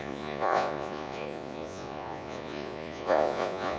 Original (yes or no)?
no